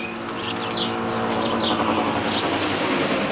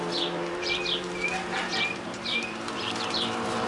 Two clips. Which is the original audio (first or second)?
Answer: first